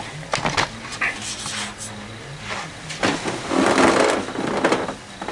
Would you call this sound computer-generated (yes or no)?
no